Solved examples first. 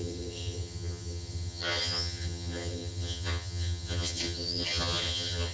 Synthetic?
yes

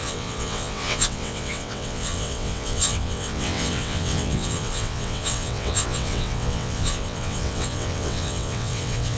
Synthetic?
yes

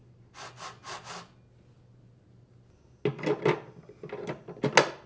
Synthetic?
no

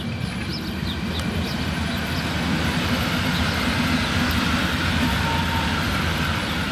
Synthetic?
no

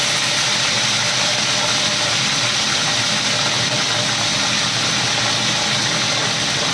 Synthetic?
no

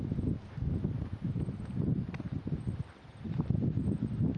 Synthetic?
no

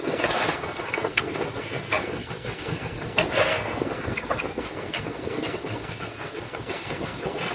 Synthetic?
yes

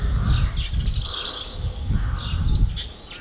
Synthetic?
no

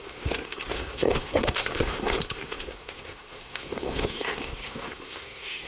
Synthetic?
yes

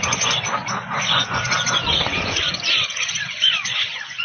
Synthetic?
yes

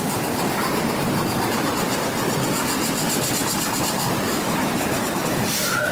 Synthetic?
yes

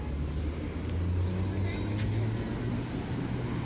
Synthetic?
no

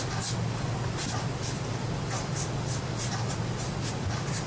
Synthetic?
no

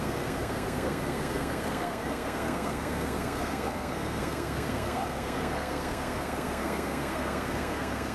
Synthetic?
yes